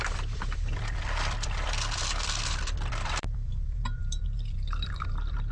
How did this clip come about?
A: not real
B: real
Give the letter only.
A